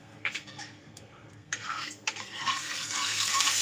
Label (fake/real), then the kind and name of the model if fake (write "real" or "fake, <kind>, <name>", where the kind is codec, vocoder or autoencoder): fake, codec, SNAC